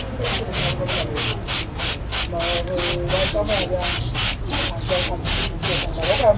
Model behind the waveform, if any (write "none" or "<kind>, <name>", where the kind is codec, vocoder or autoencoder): none